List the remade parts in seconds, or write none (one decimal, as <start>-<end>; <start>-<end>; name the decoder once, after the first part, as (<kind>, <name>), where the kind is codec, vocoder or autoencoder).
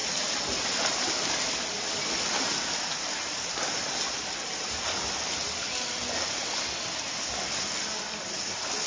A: none